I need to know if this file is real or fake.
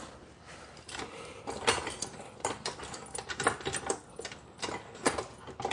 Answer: real